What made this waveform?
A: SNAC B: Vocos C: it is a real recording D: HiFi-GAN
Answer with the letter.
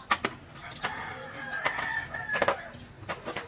C